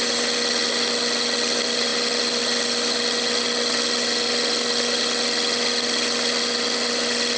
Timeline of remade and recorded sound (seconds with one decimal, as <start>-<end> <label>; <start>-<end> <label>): 0.0-7.4 recorded